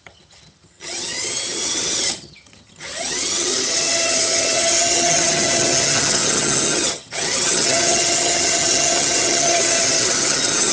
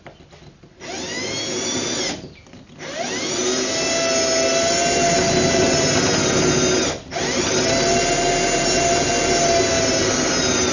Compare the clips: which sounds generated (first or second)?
first